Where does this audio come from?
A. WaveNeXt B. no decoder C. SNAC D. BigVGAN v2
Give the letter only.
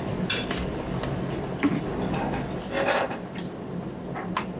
B